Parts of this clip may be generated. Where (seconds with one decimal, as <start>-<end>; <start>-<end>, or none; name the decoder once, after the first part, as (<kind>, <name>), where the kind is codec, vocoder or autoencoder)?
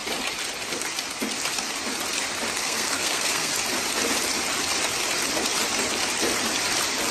2.6-3.5 (codec, SNAC)